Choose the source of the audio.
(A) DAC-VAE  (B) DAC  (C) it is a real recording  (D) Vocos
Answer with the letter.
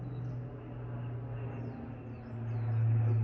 C